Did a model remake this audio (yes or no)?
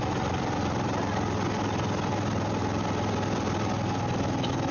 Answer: no